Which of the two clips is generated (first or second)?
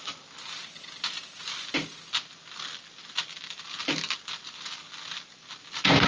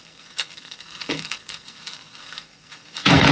second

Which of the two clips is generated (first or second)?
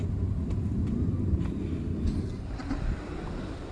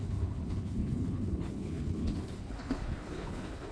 second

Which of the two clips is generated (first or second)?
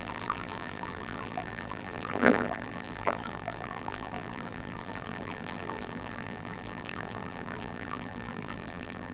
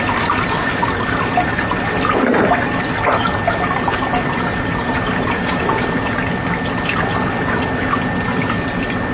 first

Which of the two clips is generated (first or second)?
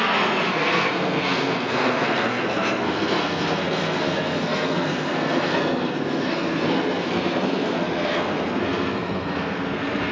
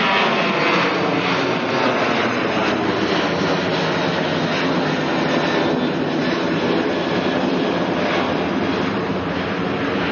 first